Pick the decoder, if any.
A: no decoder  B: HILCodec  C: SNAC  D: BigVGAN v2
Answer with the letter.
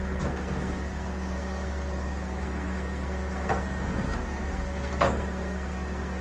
C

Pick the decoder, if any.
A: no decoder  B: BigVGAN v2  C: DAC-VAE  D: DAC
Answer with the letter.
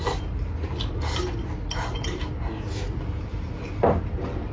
A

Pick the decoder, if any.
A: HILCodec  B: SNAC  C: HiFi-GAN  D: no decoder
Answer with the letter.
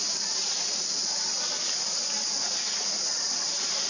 D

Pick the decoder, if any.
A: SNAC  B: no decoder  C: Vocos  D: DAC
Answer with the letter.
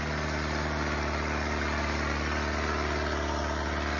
B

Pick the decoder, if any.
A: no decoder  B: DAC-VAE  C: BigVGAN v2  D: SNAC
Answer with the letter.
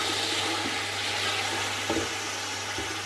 A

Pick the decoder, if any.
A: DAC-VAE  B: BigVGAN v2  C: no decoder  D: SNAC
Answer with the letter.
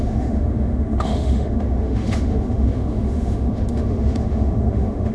A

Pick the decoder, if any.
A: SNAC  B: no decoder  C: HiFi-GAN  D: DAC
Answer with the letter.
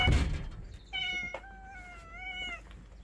B